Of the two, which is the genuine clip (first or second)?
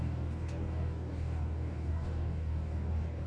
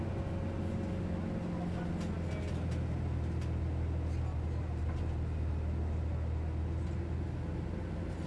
second